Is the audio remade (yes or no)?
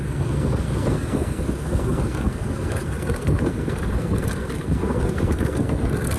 yes